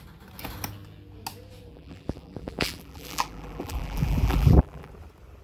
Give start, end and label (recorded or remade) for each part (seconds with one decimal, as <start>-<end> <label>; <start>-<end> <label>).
0.0-1.7 recorded; 1.7-4.9 remade; 4.9-5.4 recorded